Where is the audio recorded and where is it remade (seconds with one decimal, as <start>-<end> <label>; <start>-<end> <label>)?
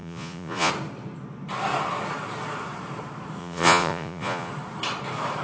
0.0-0.7 remade; 0.7-3.4 recorded; 3.4-4.5 remade; 4.5-5.4 recorded